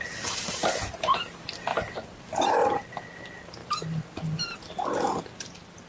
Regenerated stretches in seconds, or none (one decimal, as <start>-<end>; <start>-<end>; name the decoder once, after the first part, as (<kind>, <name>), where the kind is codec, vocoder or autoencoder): 3.6-4.7 (vocoder, BigVGAN v2)